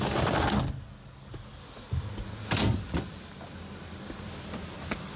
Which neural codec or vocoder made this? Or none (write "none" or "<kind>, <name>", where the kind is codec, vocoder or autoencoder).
none